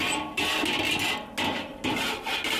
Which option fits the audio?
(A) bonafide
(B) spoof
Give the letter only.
A